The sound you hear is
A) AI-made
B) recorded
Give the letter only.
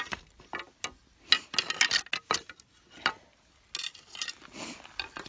B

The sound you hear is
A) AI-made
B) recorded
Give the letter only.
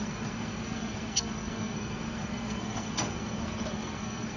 A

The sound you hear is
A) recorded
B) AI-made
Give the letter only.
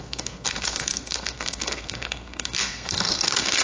B